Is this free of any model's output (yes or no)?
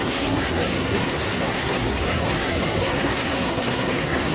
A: no